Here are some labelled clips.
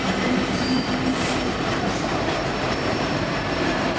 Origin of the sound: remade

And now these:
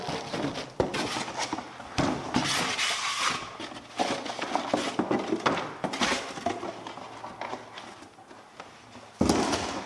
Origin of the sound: recorded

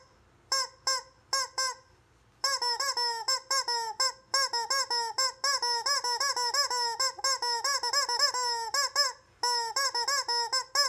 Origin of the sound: recorded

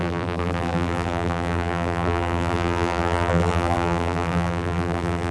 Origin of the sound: remade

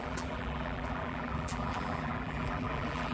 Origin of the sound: remade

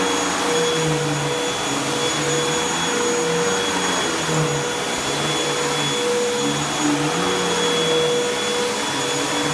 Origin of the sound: recorded